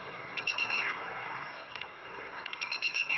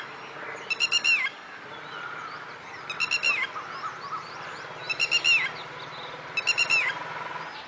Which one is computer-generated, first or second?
first